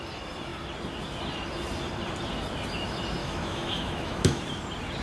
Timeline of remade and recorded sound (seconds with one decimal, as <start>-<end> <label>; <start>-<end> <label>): 0.0-3.2 recorded; 3.2-4.4 remade; 4.4-5.0 recorded